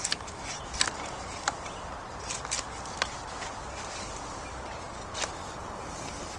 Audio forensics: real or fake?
real